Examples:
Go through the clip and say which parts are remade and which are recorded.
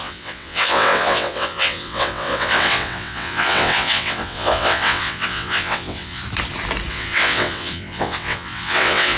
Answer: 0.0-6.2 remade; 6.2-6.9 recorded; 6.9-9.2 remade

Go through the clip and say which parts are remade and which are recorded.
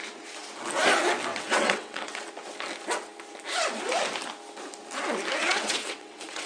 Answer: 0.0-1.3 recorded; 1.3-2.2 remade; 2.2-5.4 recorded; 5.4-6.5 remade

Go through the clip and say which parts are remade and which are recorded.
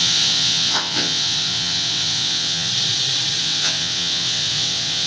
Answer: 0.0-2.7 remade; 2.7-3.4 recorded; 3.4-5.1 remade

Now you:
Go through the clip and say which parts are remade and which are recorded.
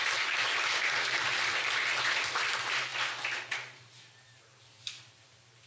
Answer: 0.0-5.7 recorded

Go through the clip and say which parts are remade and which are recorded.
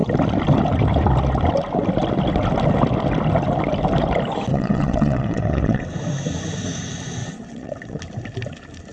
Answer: 0.0-4.5 recorded; 4.5-5.8 remade; 5.8-7.2 recorded; 7.2-8.0 remade; 8.0-8.9 recorded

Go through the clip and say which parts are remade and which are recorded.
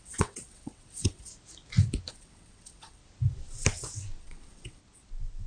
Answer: 0.0-1.3 remade; 1.3-2.1 recorded; 2.1-3.0 remade; 3.0-4.2 recorded; 4.2-4.8 remade; 4.8-5.5 recorded